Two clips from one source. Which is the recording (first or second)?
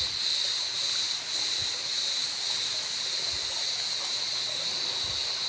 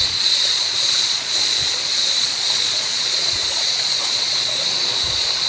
first